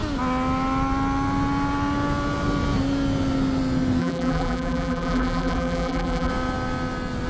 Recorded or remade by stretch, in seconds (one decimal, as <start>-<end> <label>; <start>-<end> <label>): 0.0-4.0 recorded; 4.0-6.3 remade; 6.3-7.3 recorded

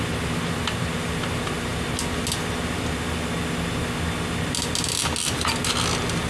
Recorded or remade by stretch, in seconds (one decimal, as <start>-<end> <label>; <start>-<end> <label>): 0.0-6.3 recorded

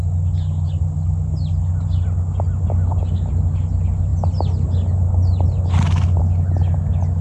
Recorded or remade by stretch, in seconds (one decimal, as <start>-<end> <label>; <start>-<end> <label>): 0.0-7.2 recorded

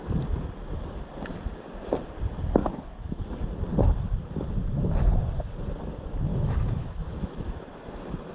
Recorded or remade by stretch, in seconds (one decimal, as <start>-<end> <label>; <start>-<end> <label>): 0.0-2.6 recorded; 2.6-3.2 remade; 3.2-6.3 recorded; 6.3-7.6 remade; 7.6-8.3 recorded

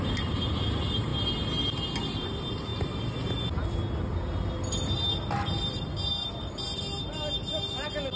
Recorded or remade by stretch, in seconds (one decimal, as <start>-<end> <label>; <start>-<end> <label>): 0.0-8.2 recorded